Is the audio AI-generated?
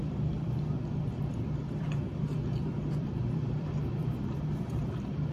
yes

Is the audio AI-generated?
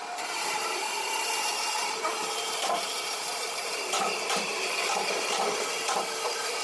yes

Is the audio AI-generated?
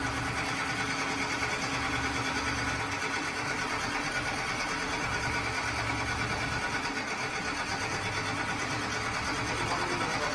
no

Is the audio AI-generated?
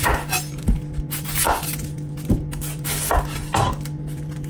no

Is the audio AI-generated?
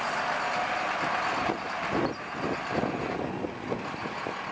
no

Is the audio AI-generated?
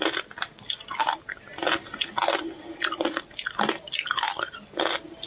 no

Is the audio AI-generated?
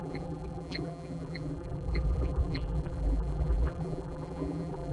yes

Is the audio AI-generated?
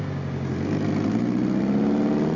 no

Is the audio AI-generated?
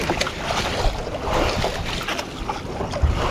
no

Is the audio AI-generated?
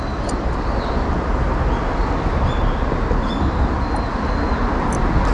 no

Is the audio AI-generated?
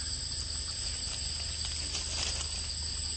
no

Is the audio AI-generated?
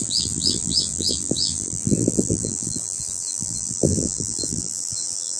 yes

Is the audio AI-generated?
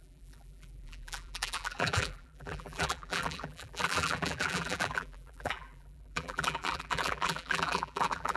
yes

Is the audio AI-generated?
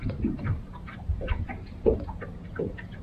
yes